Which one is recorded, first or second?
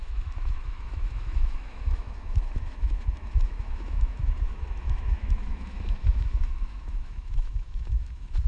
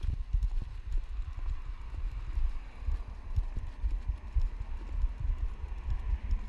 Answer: second